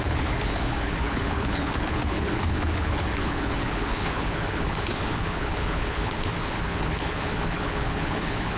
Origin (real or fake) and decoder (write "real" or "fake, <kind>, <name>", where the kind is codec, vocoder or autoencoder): fake, codec, HILCodec